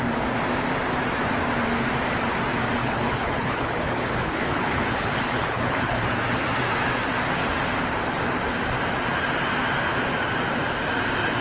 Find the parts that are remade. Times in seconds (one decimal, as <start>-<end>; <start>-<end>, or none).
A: 2.8-6.0